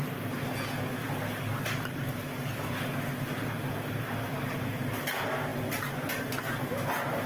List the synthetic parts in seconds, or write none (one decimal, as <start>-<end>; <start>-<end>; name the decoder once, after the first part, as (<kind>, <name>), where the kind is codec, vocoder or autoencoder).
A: 1.0-4.7 (vocoder, BigVGAN v2)